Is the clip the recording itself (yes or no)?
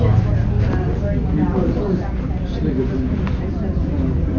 yes